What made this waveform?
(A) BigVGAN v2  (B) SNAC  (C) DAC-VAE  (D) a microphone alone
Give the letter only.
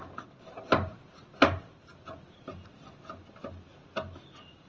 D